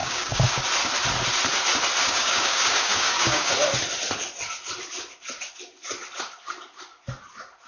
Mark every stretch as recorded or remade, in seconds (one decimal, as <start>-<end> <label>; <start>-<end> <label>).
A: 0.0-0.6 remade; 0.6-2.0 recorded; 2.0-3.5 remade; 3.5-7.7 recorded